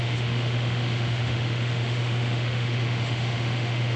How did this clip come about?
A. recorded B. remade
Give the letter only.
B